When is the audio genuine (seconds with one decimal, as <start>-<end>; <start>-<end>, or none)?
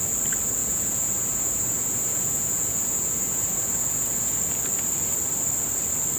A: 0.0-0.6; 4.3-6.2